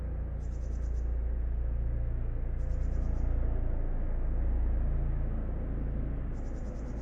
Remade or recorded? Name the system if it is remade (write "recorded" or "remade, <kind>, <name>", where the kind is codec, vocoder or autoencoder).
recorded